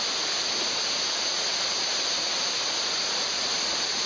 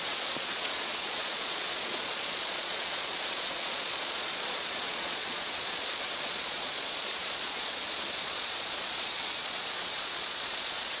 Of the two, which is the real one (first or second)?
first